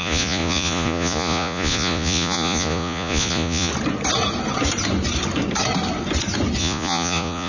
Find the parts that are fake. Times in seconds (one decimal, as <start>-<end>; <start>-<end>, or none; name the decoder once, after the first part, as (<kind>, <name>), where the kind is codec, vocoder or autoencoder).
0.0-3.7 (vocoder, Vocos); 6.6-7.5